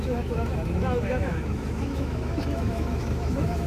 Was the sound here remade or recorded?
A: remade